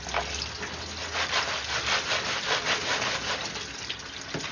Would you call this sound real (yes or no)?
yes